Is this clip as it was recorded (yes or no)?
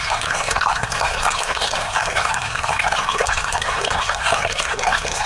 no